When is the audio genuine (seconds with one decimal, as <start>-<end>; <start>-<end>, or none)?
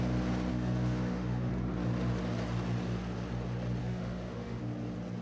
0.0-0.5; 1.5-3.8; 4.6-5.2